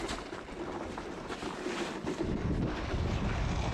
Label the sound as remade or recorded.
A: recorded